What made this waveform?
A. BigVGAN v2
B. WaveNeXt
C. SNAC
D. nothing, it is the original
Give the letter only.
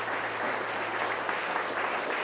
A